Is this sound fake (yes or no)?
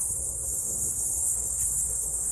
yes